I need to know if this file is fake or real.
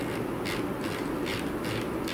real